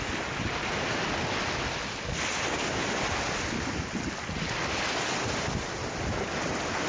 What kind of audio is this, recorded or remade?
recorded